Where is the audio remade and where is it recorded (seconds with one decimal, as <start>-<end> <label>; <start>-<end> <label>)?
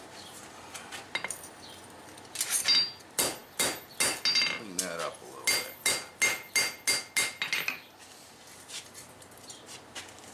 0.0-10.3 recorded